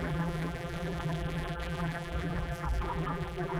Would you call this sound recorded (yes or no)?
no